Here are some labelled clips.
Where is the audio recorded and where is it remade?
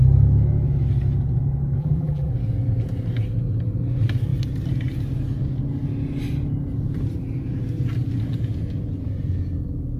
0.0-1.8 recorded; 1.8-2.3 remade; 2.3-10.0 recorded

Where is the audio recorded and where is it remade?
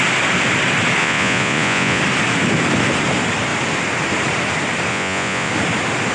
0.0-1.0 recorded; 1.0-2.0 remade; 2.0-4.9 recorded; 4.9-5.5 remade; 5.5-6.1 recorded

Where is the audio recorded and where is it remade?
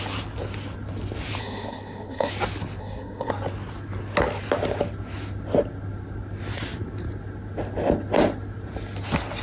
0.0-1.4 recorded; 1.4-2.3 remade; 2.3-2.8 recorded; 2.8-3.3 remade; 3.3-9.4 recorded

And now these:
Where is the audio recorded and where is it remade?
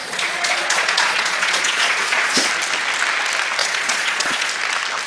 0.0-2.5 remade; 2.5-3.6 recorded; 3.6-4.5 remade; 4.5-5.1 recorded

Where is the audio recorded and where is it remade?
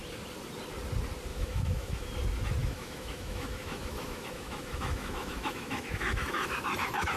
0.0-1.3 recorded; 1.3-2.1 remade; 2.1-2.6 recorded; 2.6-7.2 remade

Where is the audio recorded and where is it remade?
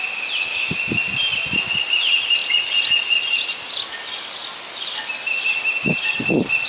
0.0-6.7 recorded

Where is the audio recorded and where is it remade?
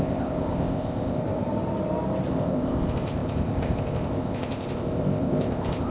0.0-1.2 remade; 1.2-2.3 recorded; 2.3-5.9 remade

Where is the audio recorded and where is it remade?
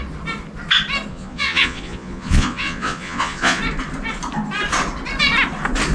0.0-1.1 recorded; 1.1-3.6 remade; 3.6-5.9 recorded